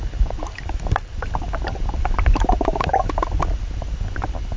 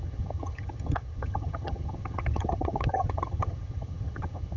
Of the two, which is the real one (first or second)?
first